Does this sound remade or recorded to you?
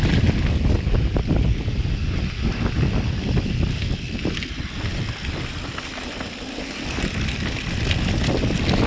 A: recorded